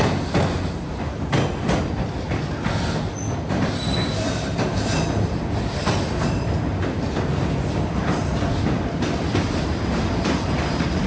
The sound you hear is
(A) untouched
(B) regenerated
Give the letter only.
A